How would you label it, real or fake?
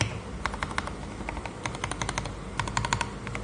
real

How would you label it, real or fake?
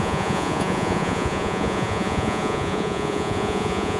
fake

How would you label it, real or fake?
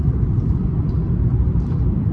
fake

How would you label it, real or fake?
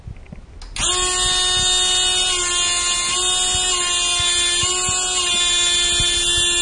real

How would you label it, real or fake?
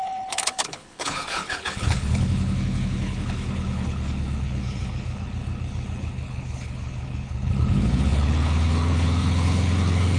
fake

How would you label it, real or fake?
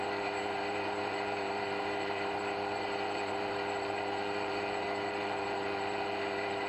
fake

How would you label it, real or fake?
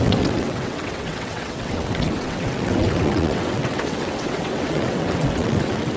fake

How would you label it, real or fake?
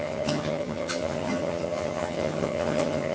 fake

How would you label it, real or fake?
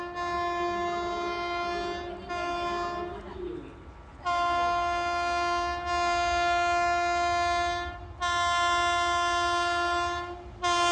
real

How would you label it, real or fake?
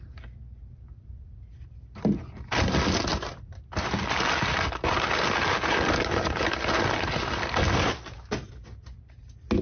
real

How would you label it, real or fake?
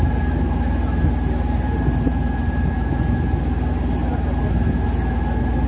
real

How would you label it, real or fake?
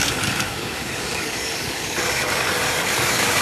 fake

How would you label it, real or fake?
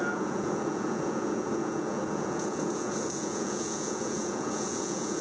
fake